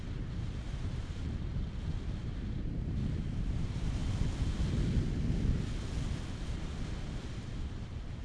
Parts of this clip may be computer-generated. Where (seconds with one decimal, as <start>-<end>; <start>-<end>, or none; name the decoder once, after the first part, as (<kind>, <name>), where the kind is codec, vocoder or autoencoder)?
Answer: 0.0-1.5 (vocoder, BigVGAN v2); 2.2-4.0; 7.2-8.2